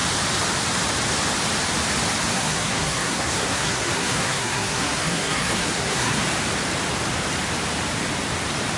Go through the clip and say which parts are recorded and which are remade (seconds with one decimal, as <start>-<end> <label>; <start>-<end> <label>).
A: 0.0-2.3 recorded; 2.3-6.2 remade; 6.2-8.8 recorded